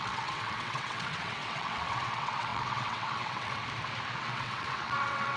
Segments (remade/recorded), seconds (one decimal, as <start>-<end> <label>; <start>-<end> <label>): 0.0-3.6 remade; 3.6-4.2 recorded; 4.2-5.4 remade